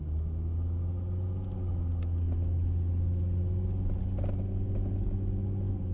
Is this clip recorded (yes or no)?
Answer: yes